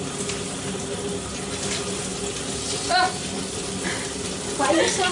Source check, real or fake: real